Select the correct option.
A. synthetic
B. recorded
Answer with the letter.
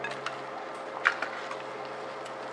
B